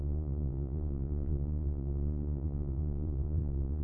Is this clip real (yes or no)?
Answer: no